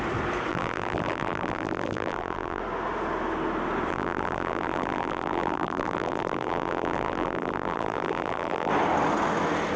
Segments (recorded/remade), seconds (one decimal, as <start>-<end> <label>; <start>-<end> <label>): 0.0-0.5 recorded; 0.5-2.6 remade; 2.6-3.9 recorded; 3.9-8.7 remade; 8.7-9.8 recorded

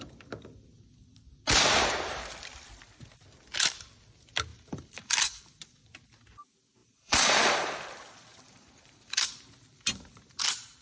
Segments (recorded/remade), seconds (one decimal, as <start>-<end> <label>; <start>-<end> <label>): 0.0-4.5 recorded; 4.5-5.4 remade; 5.4-6.8 recorded; 6.8-7.7 remade; 7.7-8.3 recorded; 8.3-9.3 remade; 9.3-10.8 recorded

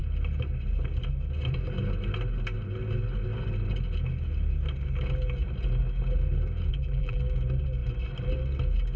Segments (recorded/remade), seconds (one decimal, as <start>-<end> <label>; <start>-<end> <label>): 0.0-6.7 recorded; 6.7-7.2 remade; 7.2-9.0 recorded